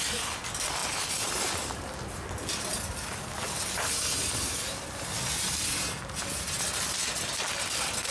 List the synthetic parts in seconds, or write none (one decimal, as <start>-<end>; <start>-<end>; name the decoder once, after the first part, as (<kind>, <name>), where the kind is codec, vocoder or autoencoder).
none